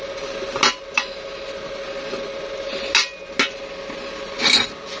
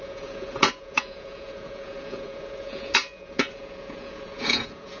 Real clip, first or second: first